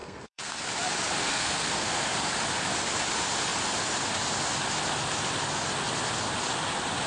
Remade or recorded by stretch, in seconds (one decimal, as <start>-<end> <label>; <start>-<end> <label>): 0.0-0.6 remade; 0.6-1.2 recorded; 1.2-2.0 remade; 2.0-7.1 recorded